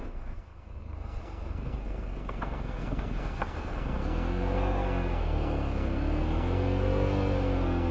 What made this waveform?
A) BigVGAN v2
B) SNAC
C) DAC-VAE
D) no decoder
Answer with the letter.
B